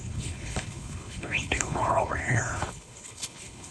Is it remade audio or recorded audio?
remade